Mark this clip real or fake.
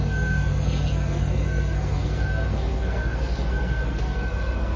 fake